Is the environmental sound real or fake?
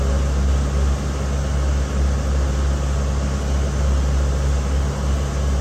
real